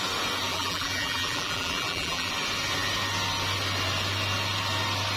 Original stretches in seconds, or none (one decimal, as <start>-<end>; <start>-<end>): 0.0-0.5; 2.3-5.2

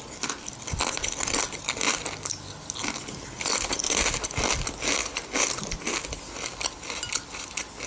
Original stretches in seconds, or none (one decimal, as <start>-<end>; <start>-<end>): 0.0-2.8; 3.8-7.9